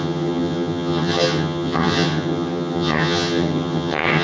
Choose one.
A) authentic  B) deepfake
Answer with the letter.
B